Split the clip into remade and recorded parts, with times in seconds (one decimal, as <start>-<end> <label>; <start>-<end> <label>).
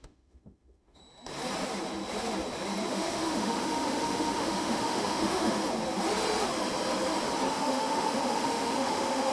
0.0-1.0 remade; 1.0-2.9 recorded; 2.9-5.6 remade; 5.6-7.5 recorded; 7.5-9.3 remade